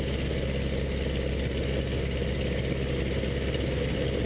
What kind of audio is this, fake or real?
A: real